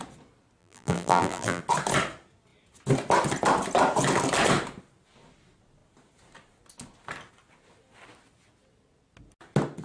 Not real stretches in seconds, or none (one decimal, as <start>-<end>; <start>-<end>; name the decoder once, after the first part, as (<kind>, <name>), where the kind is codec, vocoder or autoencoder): 0.6-1.6 (vocoder, BigVGAN v2)